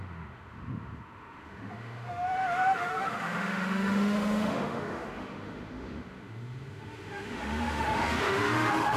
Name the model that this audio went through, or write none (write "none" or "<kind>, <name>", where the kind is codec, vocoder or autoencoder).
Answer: autoencoder, DAC-VAE